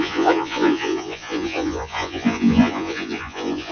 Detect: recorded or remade remade